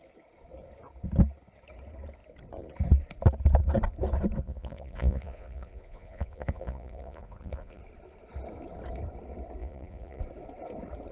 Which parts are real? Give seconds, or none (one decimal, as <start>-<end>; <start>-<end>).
0.0-4.4; 7.8-9.6; 10.2-11.1